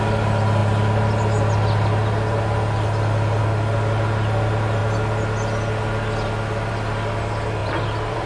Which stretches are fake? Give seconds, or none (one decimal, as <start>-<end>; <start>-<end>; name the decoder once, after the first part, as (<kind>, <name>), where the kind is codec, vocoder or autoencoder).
7.6-8.3 (vocoder, BigVGAN v2)